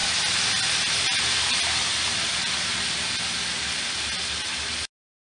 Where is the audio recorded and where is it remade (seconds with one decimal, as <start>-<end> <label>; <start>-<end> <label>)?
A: 0.0-5.2 recorded

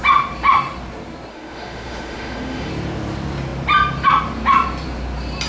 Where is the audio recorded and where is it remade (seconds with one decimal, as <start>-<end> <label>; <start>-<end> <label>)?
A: 0.0-1.3 recorded; 1.3-2.7 remade; 2.7-5.5 recorded

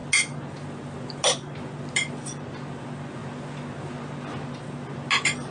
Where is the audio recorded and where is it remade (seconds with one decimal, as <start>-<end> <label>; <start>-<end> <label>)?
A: 0.0-5.5 recorded

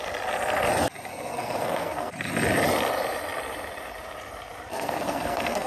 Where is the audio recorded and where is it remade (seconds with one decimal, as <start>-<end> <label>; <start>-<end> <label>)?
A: 0.0-1.1 recorded; 1.1-2.1 remade; 2.1-4.7 recorded; 4.7-5.7 remade

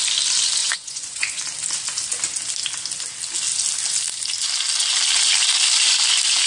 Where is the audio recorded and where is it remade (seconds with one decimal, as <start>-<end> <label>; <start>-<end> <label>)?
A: 0.0-0.6 recorded; 0.6-1.4 remade; 1.4-6.5 recorded

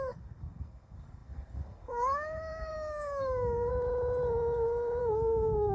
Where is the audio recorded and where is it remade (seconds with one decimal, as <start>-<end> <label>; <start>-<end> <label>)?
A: 0.0-3.7 remade; 3.7-5.0 recorded; 5.0-5.7 remade